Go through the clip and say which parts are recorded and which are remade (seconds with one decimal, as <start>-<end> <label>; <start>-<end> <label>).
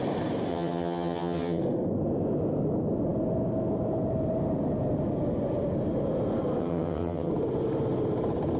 0.0-0.5 recorded; 0.5-1.6 remade; 1.6-6.6 recorded; 6.6-7.3 remade; 7.3-8.6 recorded